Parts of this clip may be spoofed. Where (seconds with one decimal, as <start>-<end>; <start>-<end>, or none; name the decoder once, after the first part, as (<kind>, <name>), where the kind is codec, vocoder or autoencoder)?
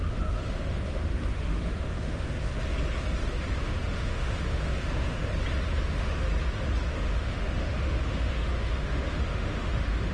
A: 0.0-2.6 (autoencoder, DAC-VAE); 3.6-5.3; 5.8-6.3; 6.9-10.1